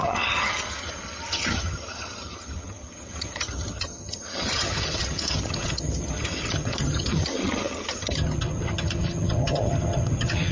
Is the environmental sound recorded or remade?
remade